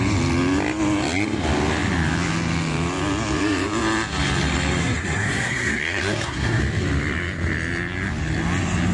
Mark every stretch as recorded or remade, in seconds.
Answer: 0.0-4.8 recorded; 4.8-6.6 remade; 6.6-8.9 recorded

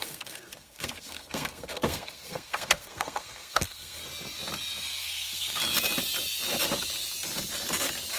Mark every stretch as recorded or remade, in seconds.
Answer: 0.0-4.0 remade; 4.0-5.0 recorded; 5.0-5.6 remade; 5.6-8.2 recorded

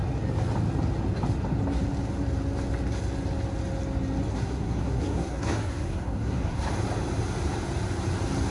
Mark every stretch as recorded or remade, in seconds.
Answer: 0.0-4.3 recorded; 4.3-6.7 remade; 6.7-8.5 recorded

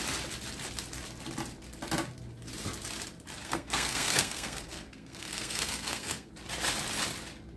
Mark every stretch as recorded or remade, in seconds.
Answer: 0.0-3.4 recorded; 3.4-6.3 remade; 6.3-7.6 recorded